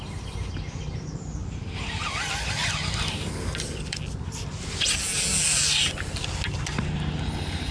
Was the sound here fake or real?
real